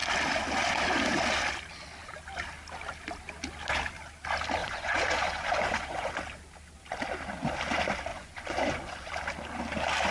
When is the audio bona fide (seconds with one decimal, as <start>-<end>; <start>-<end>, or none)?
0.0-4.6; 6.1-8.1; 9.1-10.1